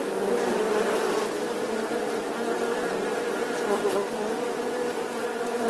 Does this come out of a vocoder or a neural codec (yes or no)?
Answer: no